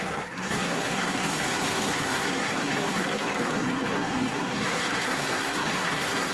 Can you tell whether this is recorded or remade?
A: remade